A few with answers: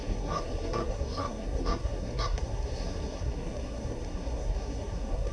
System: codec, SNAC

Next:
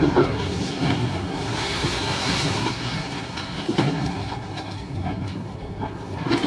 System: codec, SNAC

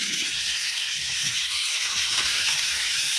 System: codec, SNAC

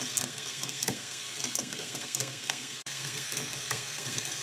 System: codec, SNAC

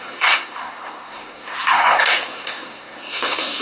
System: codec, SNAC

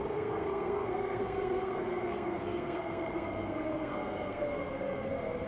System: codec, SNAC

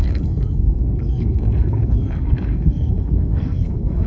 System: codec, SNAC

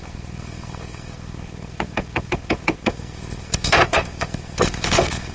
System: codec, SNAC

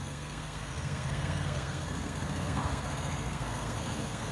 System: codec, SNAC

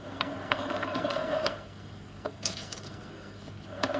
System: codec, SNAC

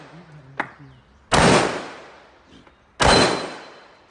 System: none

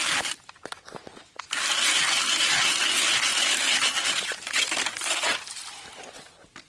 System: none